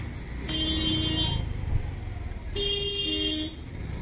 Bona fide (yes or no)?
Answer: yes